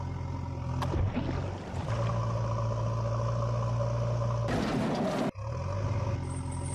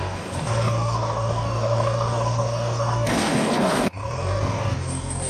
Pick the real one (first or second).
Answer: first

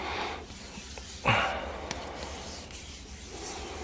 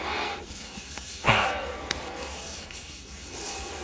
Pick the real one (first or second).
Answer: first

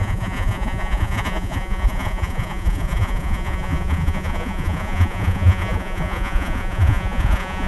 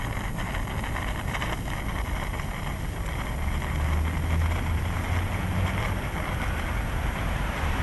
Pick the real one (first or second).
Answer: second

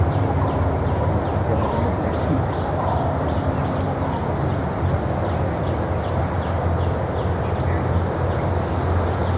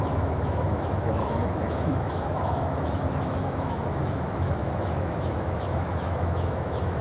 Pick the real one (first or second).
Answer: first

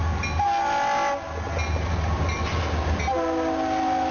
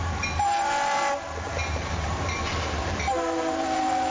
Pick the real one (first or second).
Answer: first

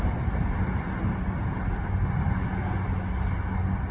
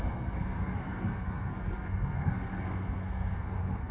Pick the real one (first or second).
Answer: first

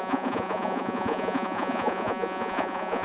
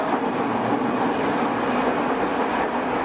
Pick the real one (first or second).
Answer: second